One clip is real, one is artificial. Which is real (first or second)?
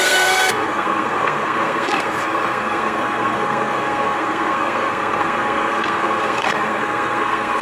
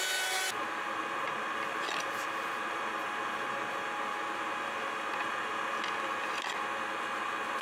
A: second